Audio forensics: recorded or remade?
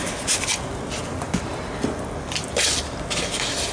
recorded